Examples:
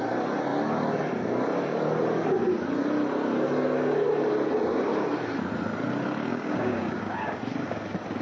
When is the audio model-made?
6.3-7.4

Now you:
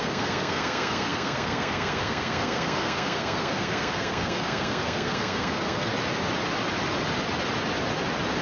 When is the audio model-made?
0.0-5.9